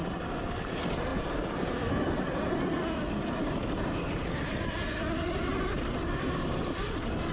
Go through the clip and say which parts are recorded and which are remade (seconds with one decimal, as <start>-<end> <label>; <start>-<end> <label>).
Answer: 0.0-7.3 recorded